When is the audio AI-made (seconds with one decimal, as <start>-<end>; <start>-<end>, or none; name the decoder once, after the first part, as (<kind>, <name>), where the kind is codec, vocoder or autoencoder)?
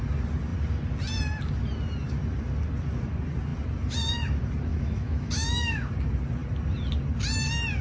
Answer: 4.7-5.9 (autoencoder, DAC-VAE)